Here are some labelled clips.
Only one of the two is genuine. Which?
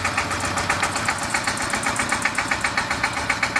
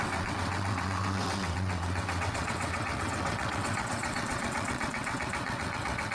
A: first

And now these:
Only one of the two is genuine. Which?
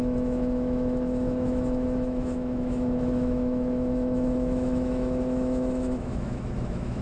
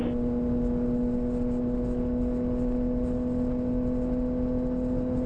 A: second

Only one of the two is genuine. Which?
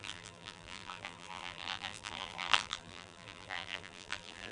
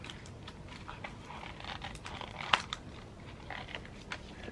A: second